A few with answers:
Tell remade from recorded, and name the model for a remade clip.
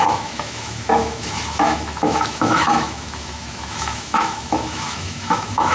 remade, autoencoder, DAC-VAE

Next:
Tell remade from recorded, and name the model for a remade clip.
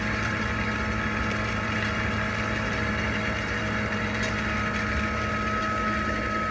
recorded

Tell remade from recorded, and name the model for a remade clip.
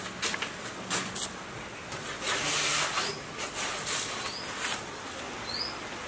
recorded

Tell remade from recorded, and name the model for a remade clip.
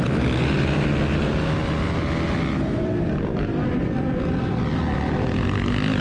recorded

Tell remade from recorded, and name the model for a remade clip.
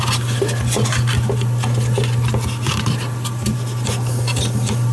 recorded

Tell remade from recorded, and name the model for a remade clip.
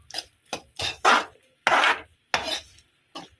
recorded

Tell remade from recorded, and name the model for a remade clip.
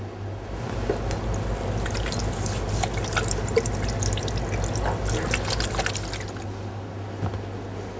recorded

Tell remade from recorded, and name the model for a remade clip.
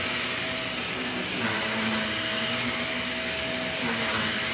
recorded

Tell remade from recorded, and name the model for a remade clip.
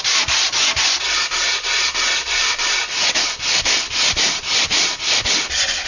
recorded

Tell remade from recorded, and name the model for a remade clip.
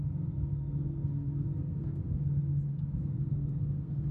remade, codec, SNAC